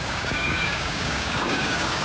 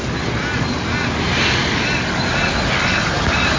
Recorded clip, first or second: second